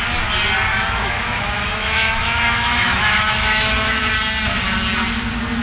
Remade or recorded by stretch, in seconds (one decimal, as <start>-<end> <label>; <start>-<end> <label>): 0.0-0.7 recorded; 0.7-4.1 remade; 4.1-5.6 recorded